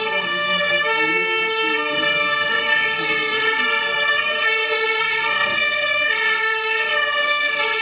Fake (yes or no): yes